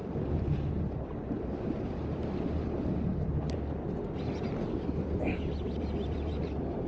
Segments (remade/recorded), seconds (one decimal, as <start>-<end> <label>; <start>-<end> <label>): 0.0-6.9 recorded